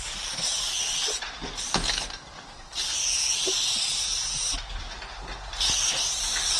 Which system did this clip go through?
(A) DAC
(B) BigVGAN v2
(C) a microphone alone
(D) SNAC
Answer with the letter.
C